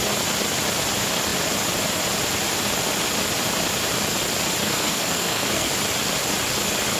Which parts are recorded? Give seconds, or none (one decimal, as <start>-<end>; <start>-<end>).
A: 0.0-4.6; 5.7-7.0